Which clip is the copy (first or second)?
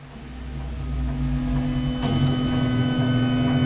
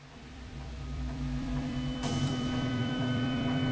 second